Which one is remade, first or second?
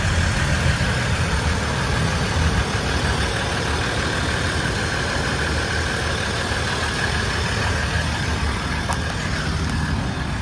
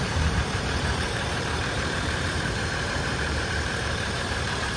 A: second